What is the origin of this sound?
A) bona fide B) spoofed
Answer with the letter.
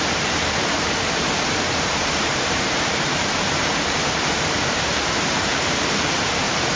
B